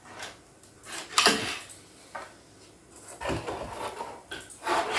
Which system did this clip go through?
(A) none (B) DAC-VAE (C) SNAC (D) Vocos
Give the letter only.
A